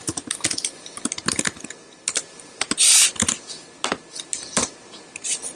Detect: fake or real real